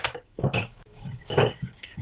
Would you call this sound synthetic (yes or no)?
yes